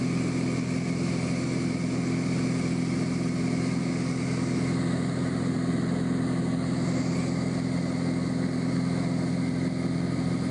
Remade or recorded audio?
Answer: recorded